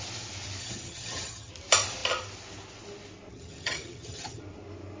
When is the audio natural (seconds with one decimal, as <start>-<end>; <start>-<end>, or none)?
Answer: 0.0-0.6; 1.5-3.3; 4.4-5.0